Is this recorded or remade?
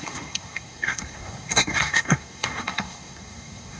remade